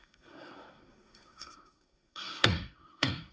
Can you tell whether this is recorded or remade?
remade